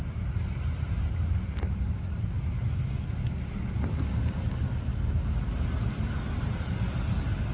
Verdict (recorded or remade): recorded